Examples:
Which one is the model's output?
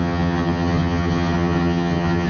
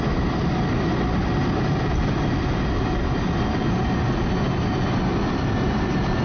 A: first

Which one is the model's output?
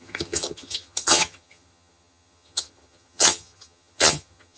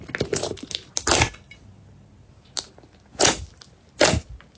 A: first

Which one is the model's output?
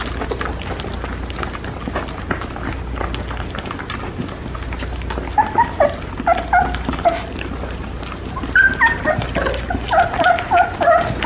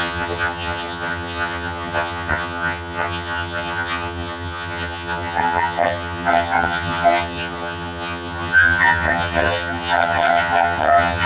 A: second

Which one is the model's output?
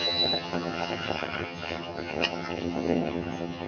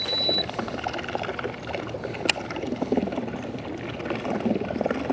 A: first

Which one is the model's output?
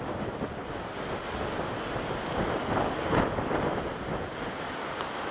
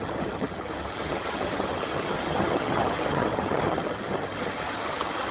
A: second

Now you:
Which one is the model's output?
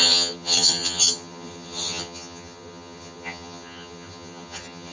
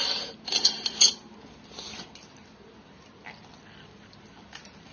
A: first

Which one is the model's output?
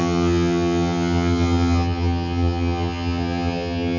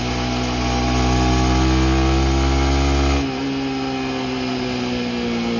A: first